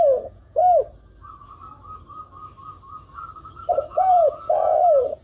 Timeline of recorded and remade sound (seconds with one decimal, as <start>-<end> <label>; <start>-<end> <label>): 0.0-0.6 remade; 0.6-3.7 recorded; 3.7-5.2 remade